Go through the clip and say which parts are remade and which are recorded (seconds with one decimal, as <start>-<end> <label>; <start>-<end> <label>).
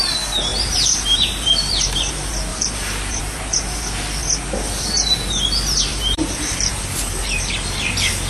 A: 0.0-0.5 recorded; 0.5-2.1 remade; 2.1-2.5 recorded; 2.5-3.2 remade; 3.2-5.9 recorded; 5.9-6.8 remade; 6.8-8.3 recorded